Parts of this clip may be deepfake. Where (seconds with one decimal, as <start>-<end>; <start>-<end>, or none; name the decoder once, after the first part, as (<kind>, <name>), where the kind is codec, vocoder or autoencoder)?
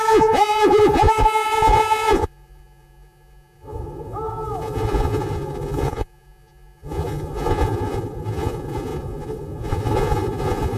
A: 0.0-10.8 (vocoder, Vocos)